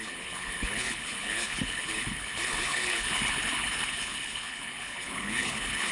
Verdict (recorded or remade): remade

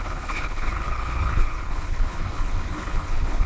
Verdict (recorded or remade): remade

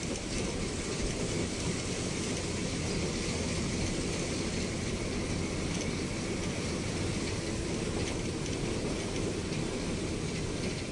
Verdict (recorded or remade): recorded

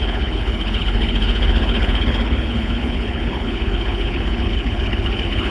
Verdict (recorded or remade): remade